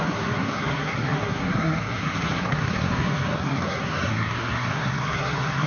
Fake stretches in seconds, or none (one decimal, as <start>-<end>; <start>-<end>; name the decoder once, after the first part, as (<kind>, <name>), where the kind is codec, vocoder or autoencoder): 0.0-5.7 (codec, SNAC)

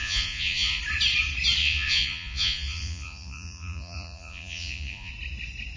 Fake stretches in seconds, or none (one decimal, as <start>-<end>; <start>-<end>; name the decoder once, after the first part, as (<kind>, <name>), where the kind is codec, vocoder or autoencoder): 0.0-0.8 (vocoder, Vocos); 1.6-5.1

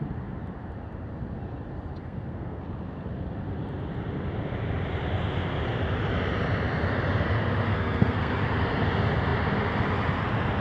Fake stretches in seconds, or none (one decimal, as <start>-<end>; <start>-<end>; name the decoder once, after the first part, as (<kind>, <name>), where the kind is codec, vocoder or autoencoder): 2.0-2.6 (codec, SNAC); 7.7-8.3

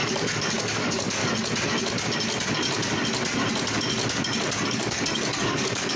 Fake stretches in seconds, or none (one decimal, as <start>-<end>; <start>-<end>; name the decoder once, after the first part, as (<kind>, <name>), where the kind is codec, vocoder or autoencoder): 0.0-1.2 (codec, DAC); 4.7-6.0

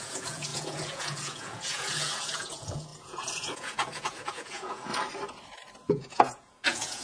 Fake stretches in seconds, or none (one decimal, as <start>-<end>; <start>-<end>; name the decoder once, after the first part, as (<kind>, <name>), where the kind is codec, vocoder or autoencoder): 0.0-4.9 (vocoder, Vocos); 5.9-7.0